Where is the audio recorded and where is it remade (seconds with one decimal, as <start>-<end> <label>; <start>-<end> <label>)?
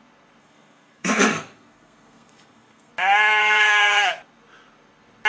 0.0-0.4 recorded; 0.4-2.9 remade; 2.9-3.4 recorded; 3.4-4.1 remade; 4.1-5.3 recorded